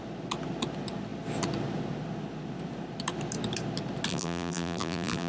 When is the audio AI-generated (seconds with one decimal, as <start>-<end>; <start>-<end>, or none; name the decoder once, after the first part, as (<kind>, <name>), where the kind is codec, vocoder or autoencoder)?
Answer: 4.1-5.3 (vocoder, BigVGAN v2)